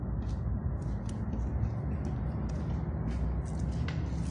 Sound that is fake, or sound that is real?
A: real